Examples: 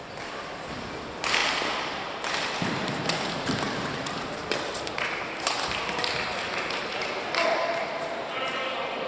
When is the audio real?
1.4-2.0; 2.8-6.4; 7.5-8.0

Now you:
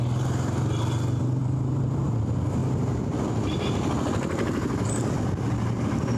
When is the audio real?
0.0-1.4; 2.0-6.2

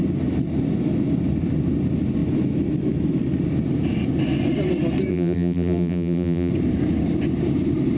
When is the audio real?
0.0-5.1; 6.5-8.0

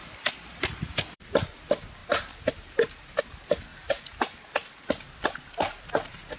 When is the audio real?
3.7-4.2

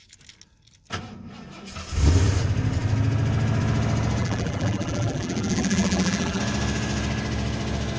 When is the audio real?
0.0-4.2; 6.4-8.0

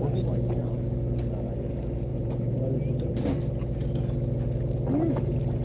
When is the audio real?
0.0-2.1; 3.1-5.6

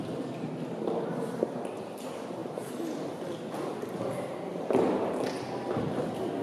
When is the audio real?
0.0-6.4

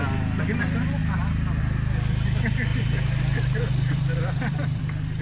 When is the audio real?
0.0-2.7; 4.8-5.2